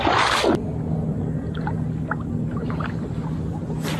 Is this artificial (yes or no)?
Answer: no